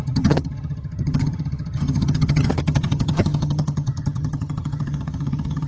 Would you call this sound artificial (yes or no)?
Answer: yes